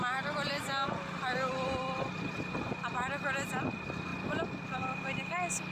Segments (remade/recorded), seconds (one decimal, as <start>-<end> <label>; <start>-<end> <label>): 0.0-5.7 recorded